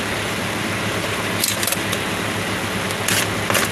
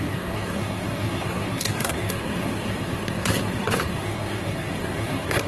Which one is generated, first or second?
second